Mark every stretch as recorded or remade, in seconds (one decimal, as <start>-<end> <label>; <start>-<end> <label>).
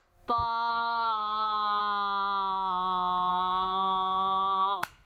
0.0-0.7 recorded; 0.7-1.8 remade; 1.8-3.3 recorded; 3.3-5.1 remade